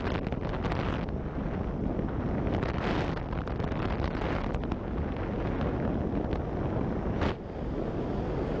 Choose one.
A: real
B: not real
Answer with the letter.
A